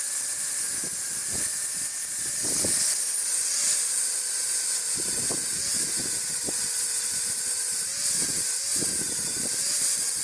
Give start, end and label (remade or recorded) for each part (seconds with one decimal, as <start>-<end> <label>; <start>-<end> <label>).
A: 0.0-10.2 recorded